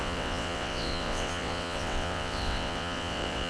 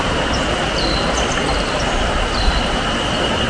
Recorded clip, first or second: second